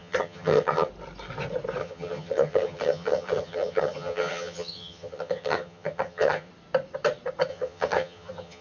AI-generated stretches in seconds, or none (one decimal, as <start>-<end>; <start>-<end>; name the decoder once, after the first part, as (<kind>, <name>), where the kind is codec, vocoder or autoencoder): 0.0-0.9 (vocoder, HiFi-GAN); 1.8-6.5; 7.5-8.6